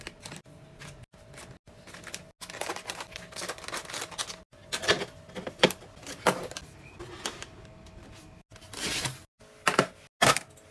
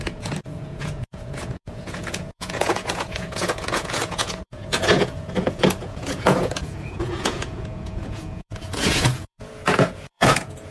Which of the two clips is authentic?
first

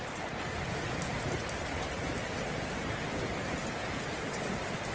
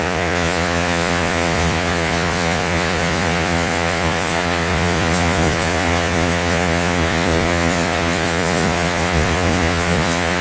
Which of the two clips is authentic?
first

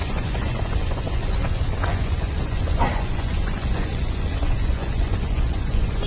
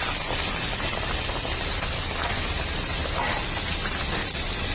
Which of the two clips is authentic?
second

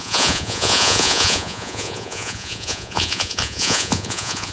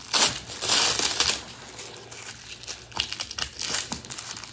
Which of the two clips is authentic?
second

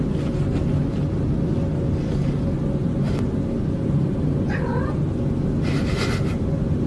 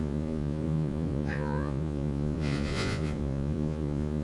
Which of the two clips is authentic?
first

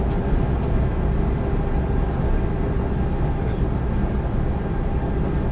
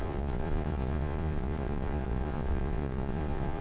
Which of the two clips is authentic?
first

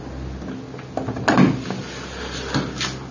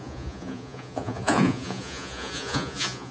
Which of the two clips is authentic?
first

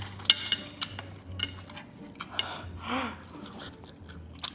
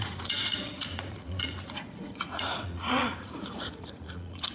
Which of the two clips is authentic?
first